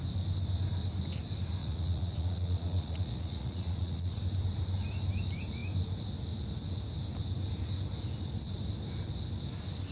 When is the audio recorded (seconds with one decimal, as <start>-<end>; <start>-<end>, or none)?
0.0-1.6; 4.2-9.9